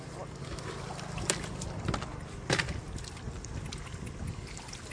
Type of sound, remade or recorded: recorded